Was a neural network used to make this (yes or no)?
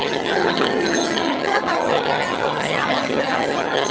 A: yes